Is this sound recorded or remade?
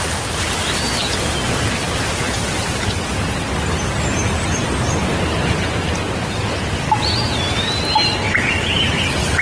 recorded